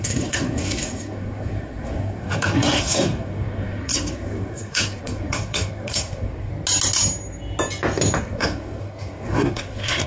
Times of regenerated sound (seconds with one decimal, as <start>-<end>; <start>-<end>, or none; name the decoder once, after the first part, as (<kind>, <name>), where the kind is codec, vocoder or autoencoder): 0.0-6.5 (codec, SNAC); 8.2-10.1